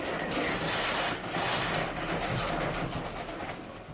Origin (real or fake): real